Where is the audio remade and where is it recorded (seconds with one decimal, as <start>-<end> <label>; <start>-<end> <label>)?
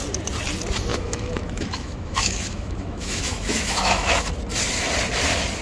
0.0-0.9 recorded; 0.9-4.3 remade; 4.3-5.6 recorded